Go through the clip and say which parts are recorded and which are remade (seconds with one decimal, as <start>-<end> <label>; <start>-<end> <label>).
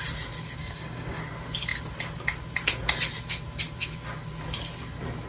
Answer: 0.0-0.6 recorded; 0.6-1.2 remade; 1.2-5.3 recorded